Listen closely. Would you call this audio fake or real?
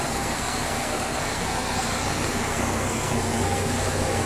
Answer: fake